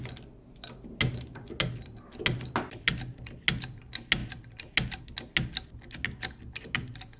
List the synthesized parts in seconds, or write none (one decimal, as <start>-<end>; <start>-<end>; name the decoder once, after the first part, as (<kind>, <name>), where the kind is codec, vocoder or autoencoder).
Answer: none